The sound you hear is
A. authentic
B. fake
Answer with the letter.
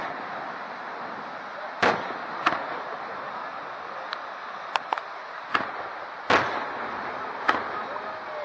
A